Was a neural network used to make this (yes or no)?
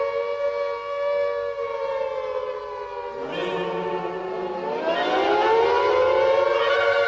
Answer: no